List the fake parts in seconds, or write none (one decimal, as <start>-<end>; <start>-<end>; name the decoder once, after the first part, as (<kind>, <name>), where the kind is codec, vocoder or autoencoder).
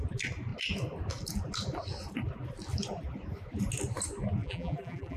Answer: 4.4-5.2 (vocoder, BigVGAN v2)